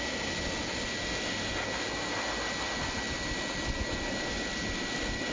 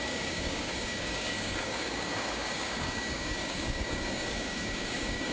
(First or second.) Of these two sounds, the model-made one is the second